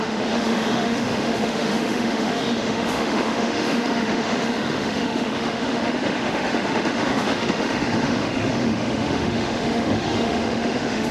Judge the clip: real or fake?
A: fake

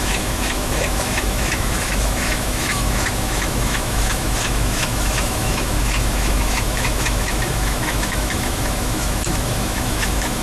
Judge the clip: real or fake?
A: fake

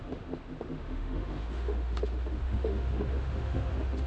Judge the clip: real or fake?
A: fake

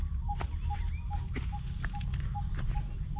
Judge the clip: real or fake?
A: real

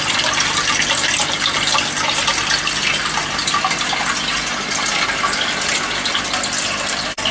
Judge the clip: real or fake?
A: real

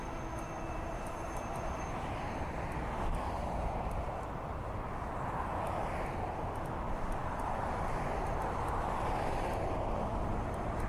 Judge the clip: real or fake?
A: real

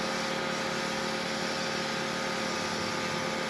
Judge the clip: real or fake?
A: real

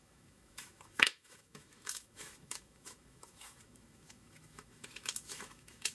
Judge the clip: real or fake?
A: fake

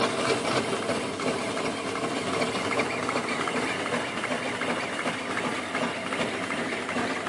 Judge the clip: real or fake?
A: real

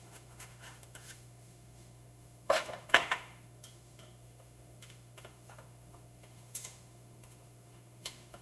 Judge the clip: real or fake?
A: fake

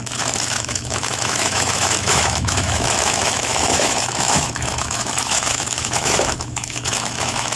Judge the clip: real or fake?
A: fake